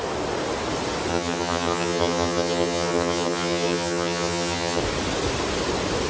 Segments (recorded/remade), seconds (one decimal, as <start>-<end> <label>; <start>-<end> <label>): 0.0-1.1 recorded; 1.1-4.8 remade; 4.8-6.1 recorded